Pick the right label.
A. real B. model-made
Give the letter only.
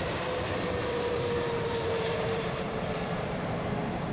B